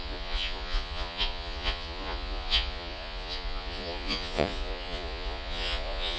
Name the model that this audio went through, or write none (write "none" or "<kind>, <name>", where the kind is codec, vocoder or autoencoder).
vocoder, Vocos